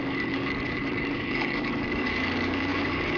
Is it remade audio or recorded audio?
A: remade